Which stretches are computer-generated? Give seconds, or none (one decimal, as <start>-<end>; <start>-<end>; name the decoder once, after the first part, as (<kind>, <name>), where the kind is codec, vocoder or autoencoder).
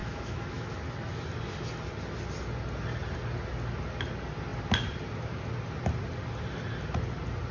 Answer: 0.0-0.7 (autoencoder, DAC-VAE)